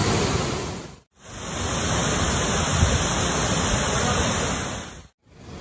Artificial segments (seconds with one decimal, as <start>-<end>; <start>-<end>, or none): 0.0-1.2

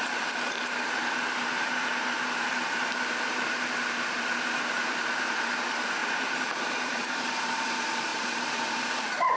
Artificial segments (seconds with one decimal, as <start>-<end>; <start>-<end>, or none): 0.0-9.4

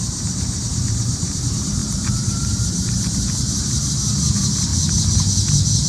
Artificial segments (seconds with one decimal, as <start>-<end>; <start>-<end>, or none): 0.0-4.7

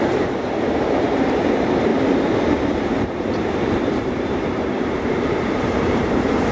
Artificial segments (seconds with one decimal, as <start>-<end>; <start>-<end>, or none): 0.0-1.9; 2.9-6.5